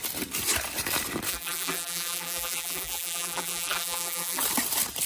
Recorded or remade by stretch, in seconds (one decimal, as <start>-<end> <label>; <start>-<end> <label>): 0.0-1.3 recorded; 1.3-4.4 remade; 4.4-5.1 recorded